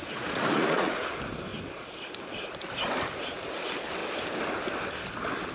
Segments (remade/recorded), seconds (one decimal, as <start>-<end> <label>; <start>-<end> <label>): 0.0-1.1 remade; 1.1-5.5 recorded